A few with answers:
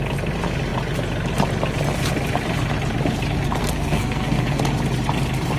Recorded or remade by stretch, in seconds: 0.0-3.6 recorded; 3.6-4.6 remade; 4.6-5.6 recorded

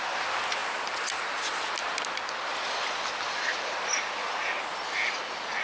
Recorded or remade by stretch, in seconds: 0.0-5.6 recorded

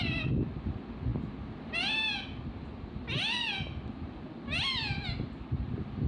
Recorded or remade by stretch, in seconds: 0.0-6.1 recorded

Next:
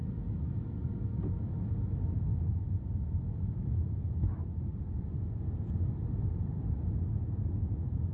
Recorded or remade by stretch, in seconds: 0.0-2.3 remade; 2.3-3.1 recorded; 3.1-4.7 remade; 4.7-7.5 recorded; 7.5-8.1 remade

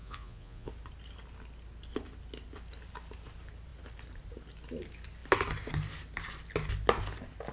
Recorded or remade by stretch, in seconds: 0.0-0.7 remade; 0.7-7.5 recorded

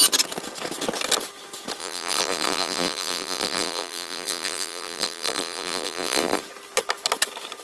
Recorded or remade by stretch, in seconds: 0.0-1.8 recorded; 1.8-6.4 remade; 6.4-7.6 recorded

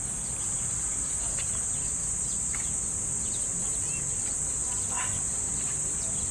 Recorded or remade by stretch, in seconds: 0.0-2.0 remade; 2.0-2.5 recorded; 2.5-4.6 remade; 4.6-5.5 recorded; 5.5-6.3 remade

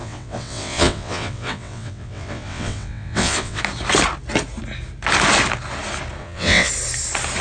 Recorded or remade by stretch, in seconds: 0.0-3.6 remade; 3.6-6.2 recorded; 6.2-6.7 remade; 6.7-7.4 recorded